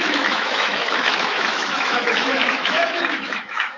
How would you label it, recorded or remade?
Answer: remade